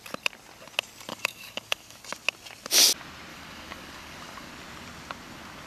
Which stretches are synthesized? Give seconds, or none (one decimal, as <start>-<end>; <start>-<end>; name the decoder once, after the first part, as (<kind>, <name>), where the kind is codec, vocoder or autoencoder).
1.1-2.0 (codec, DAC); 3.3-4.5